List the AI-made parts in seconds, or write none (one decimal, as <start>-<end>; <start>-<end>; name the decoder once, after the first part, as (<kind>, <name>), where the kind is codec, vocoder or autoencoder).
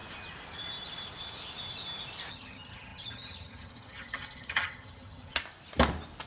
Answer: 2.3-5.4 (vocoder, HiFi-GAN)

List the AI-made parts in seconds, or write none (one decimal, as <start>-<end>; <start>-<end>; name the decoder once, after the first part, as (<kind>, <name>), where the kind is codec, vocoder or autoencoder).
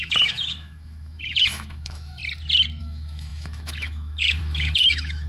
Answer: 0.0-2.2 (autoencoder, DAC-VAE); 2.8-5.3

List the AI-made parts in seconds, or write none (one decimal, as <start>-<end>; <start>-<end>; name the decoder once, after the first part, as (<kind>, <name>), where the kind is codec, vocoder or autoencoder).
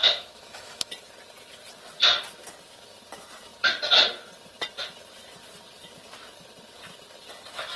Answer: 0.0-0.9 (autoencoder, DAC-VAE)